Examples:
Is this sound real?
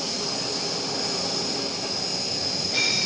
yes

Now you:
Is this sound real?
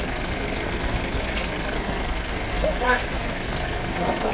no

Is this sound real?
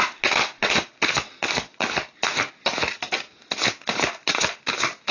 yes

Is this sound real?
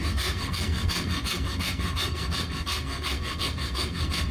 no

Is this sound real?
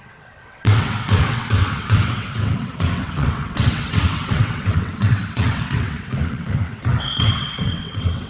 no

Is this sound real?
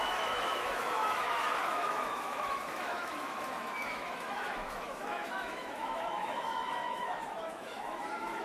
no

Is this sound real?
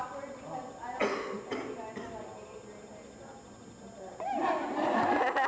yes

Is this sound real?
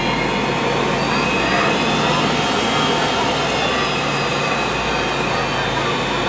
yes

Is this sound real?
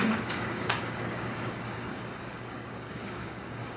no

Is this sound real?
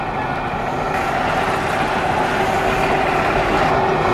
yes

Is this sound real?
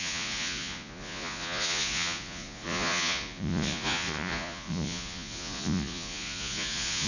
no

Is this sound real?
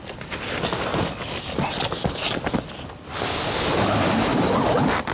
yes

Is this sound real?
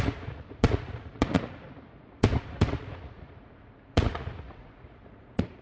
no